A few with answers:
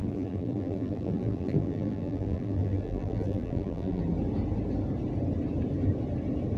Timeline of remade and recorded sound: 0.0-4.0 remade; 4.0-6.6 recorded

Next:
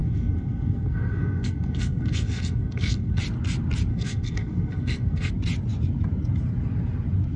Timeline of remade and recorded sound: 0.0-3.2 remade; 3.2-3.9 recorded; 3.9-5.3 remade; 5.3-7.4 recorded

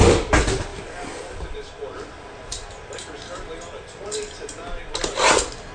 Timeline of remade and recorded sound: 0.0-5.7 recorded

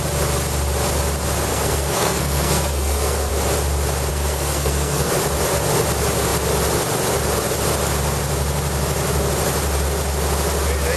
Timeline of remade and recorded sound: 0.0-1.5 recorded; 1.5-3.3 remade; 3.3-4.1 recorded; 4.1-5.1 remade; 5.1-11.0 recorded

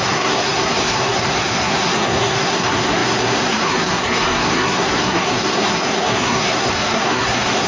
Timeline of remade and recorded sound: 0.0-7.7 remade

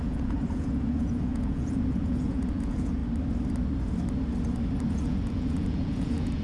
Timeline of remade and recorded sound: 0.0-3.0 remade; 3.0-4.9 recorded; 4.9-6.4 remade

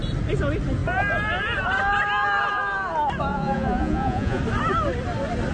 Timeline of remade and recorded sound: 0.0-3.3 recorded; 3.3-4.4 remade; 4.4-5.5 recorded

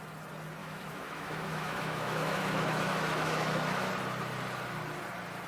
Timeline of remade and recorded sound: 0.0-0.6 recorded; 0.6-3.9 remade; 3.9-5.5 recorded